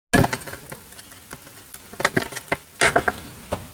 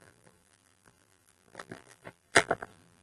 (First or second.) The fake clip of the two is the second